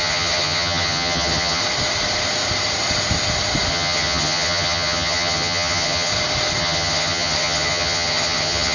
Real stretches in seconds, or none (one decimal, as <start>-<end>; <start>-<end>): 1.6-3.7; 6.1-6.6